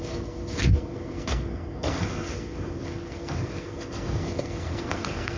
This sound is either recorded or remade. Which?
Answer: remade